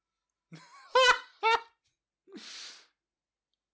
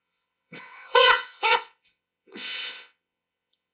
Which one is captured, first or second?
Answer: first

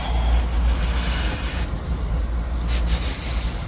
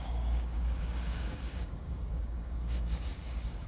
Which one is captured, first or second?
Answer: first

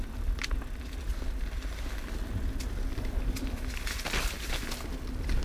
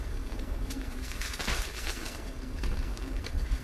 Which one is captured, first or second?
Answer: first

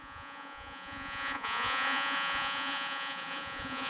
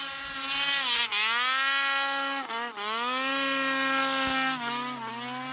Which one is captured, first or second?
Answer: second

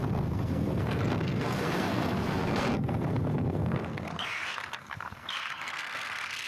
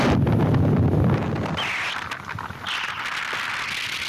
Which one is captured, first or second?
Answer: second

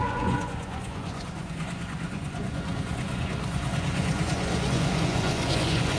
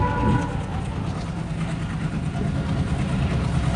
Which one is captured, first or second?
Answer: second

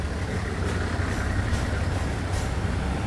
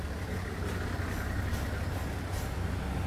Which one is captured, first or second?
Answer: second